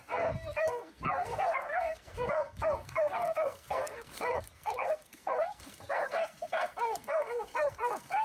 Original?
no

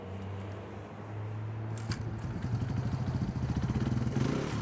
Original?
yes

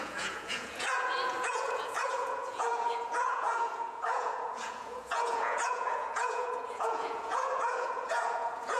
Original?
no